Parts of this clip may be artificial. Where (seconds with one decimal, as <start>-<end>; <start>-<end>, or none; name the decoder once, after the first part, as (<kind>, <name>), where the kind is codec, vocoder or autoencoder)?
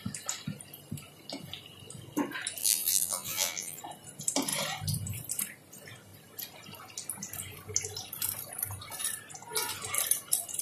2.6-3.8 (vocoder, BigVGAN v2)